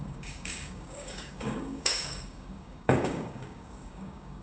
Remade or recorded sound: remade